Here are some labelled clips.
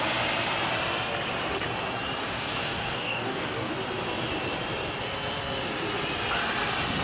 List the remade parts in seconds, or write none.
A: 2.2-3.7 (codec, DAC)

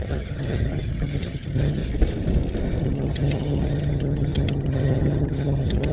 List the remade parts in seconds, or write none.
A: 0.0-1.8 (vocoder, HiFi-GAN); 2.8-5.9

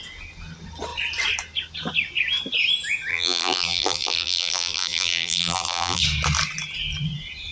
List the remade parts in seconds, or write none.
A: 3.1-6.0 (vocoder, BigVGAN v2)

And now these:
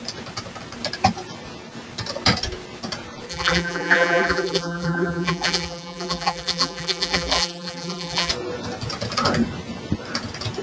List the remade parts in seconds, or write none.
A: 3.3-8.3 (vocoder, BigVGAN v2)

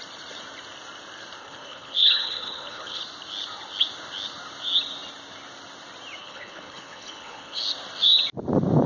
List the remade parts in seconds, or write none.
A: 1.4-3.0 (codec, HILCodec); 6.2-7.6

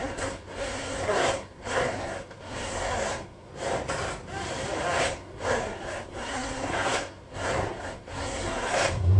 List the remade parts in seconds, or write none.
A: 0.0-3.5 (codec, SNAC); 5.0-9.2

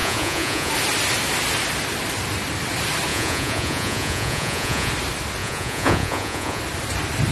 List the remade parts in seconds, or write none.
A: 0.0-0.7 (vocoder, Vocos); 3.1-4.9; 5.4-6.6